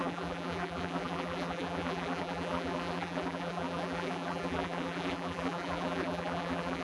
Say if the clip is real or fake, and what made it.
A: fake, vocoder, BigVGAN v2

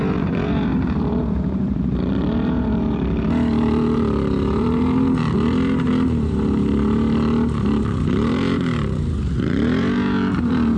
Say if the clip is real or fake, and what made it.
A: fake, vocoder, BigVGAN v2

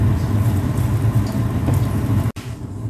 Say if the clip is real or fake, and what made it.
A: real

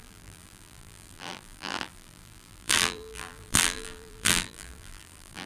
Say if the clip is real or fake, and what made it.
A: fake, vocoder, BigVGAN v2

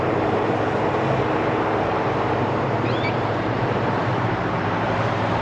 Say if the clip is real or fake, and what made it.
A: fake, vocoder, BigVGAN v2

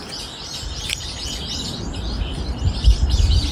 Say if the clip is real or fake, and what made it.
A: real